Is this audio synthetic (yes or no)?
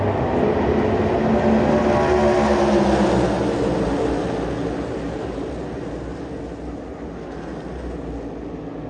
no